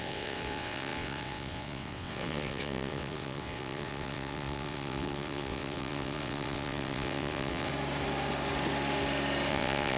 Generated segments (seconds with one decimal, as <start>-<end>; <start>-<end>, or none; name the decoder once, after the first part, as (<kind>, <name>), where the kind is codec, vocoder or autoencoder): 0.0-7.7 (vocoder, WaveNeXt); 9.5-10.0